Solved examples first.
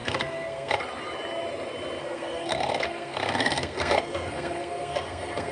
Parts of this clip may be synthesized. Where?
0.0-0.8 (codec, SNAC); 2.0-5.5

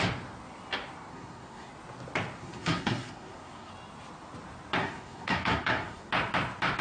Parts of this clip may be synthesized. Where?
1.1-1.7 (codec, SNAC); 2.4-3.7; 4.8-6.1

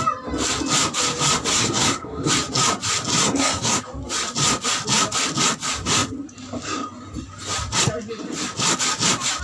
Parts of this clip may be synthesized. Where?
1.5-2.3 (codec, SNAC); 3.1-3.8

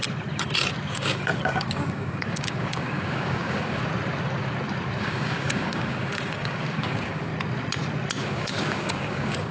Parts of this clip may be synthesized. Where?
0.9-3.8 (codec, DAC); 5.0-7.3; 8.2-9.5